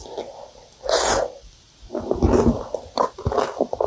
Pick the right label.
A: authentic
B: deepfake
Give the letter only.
A